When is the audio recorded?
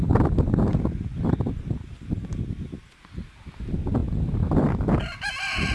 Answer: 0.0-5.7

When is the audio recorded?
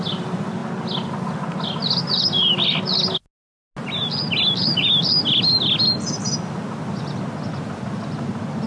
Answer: 0.0-8.7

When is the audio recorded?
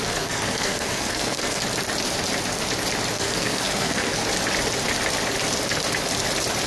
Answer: 1.6-3.1; 4.2-6.7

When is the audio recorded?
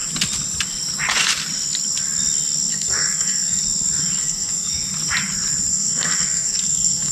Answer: 0.0-2.7; 3.6-4.2; 4.7-5.7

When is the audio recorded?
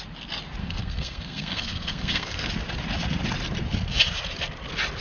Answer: 0.0-0.6; 2.5-5.0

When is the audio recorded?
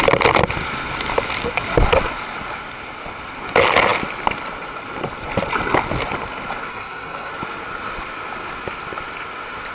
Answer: 0.0-6.7; 7.3-9.7